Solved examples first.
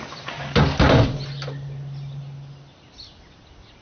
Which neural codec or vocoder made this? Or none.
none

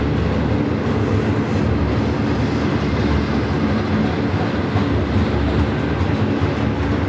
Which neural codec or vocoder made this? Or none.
none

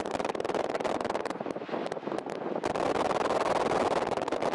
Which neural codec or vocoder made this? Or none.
none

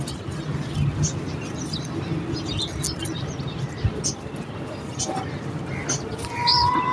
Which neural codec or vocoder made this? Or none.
none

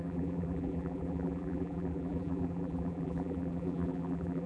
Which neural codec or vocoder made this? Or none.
vocoder, BigVGAN v2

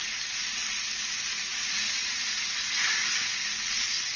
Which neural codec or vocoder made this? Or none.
none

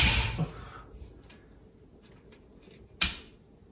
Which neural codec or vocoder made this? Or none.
none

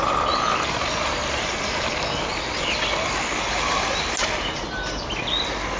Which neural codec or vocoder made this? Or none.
none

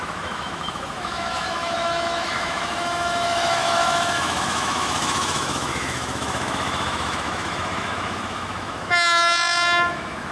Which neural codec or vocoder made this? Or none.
autoencoder, DAC-VAE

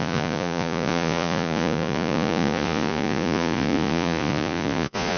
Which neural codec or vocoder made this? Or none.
vocoder, Vocos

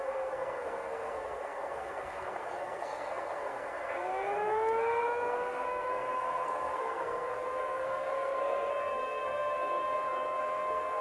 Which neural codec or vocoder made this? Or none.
codec, SNAC